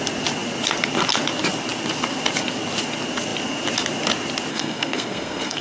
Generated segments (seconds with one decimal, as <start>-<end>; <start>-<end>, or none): 4.5-5.6